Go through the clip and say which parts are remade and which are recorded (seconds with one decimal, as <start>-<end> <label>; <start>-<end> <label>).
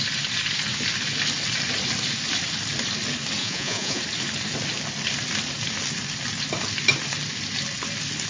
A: 0.0-3.4 recorded; 3.4-4.0 remade; 4.0-8.3 recorded